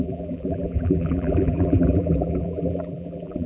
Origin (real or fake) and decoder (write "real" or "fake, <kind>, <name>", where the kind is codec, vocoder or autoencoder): fake, vocoder, BigVGAN v2